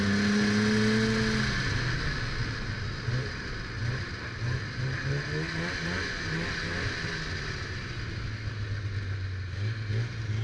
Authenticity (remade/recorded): recorded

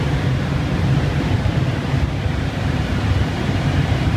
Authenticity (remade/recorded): remade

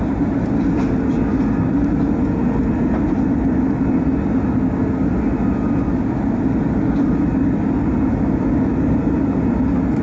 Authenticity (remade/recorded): recorded